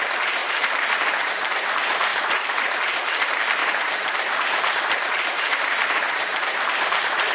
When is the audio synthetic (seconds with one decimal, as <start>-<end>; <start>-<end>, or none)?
0.4-1.3; 2.1-2.7; 3.6-7.3